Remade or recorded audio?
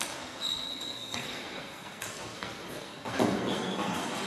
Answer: remade